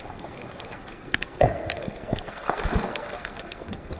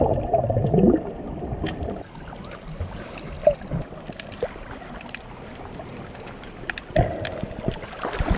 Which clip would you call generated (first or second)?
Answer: first